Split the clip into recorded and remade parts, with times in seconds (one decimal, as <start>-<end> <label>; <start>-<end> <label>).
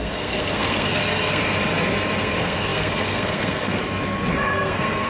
0.0-1.4 remade; 1.4-2.2 recorded; 2.2-3.8 remade; 3.8-4.3 recorded; 4.3-5.1 remade